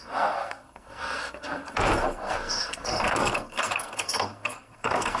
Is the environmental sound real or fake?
fake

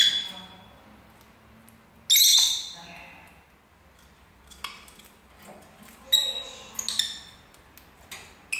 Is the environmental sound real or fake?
real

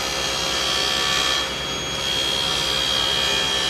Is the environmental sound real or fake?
real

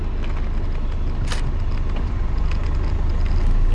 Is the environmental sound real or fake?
real